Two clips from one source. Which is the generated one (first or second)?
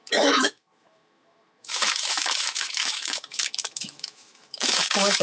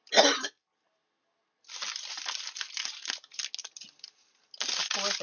first